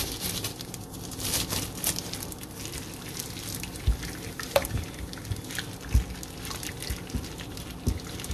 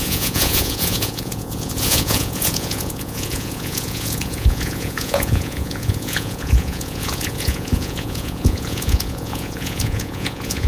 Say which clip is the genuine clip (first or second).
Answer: first